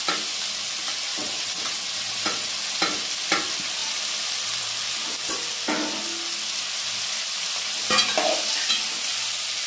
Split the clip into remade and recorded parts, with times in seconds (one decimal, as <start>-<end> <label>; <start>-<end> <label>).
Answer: 0.0-1.1 recorded; 1.1-2.5 remade; 2.5-9.7 recorded